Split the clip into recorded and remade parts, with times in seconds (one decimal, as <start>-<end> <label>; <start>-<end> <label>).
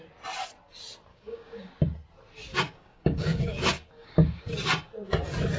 0.0-1.1 recorded; 1.1-1.7 remade; 1.7-2.5 recorded; 2.5-4.4 remade; 4.4-5.6 recorded